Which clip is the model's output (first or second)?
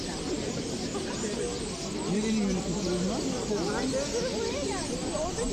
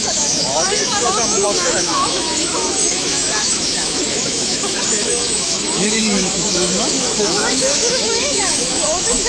second